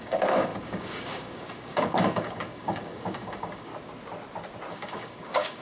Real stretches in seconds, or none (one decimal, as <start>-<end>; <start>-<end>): 3.7-4.7